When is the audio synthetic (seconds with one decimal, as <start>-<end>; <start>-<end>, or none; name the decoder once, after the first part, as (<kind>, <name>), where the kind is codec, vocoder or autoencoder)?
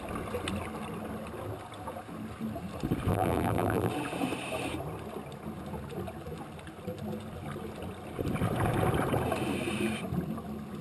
3.1-3.9 (vocoder, BigVGAN v2)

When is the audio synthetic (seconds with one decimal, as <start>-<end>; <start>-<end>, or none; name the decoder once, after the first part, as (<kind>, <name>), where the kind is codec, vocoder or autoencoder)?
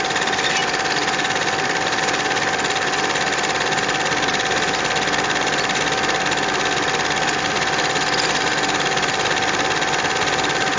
none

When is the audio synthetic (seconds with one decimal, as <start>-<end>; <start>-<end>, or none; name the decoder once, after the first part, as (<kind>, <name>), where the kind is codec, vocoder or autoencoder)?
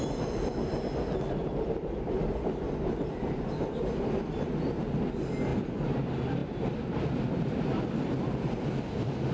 5.5-6.0 (vocoder, BigVGAN v2)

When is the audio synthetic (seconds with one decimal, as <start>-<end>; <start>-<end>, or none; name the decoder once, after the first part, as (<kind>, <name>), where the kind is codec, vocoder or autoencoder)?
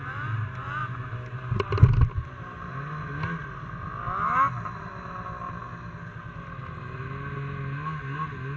0.8-2.7 (vocoder, BigVGAN v2)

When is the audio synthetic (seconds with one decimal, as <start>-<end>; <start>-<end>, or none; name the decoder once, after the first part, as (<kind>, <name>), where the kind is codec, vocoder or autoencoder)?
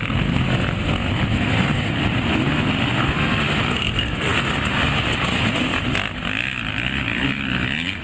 none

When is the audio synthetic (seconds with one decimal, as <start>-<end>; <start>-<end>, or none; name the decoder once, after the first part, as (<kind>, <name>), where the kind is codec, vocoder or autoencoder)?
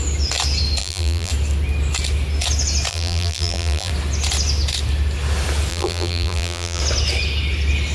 0.8-1.3 (vocoder, BigVGAN v2); 2.9-3.9; 5.7-6.8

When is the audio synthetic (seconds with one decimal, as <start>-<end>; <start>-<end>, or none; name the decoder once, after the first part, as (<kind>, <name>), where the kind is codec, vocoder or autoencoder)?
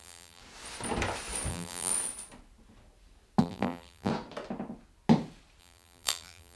0.0-0.4 (vocoder, BigVGAN v2); 1.5-1.9; 3.4-4.1; 5.6-6.6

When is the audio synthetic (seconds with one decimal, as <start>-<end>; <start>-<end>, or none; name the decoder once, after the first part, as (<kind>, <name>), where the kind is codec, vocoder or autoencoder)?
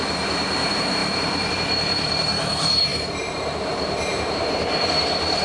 0.0-5.4 (vocoder, BigVGAN v2)